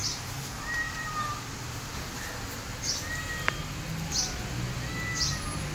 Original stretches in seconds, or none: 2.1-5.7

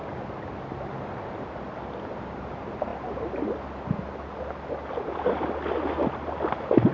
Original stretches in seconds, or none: 0.0-6.9

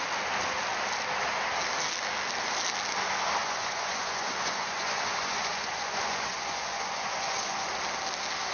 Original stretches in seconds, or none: 0.0-3.4; 7.7-8.5

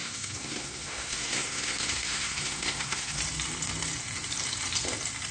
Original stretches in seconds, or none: 3.2-5.3

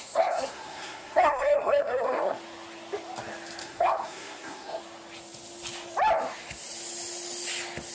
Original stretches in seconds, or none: 2.4-3.6; 4.8-7.9

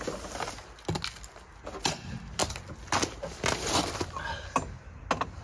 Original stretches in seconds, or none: 0.0-5.4

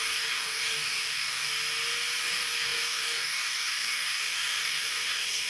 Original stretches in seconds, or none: 1.5-2.2

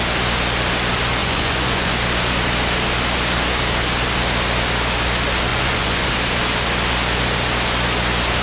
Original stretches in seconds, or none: 0.0-1.2; 1.9-5.5; 6.1-8.4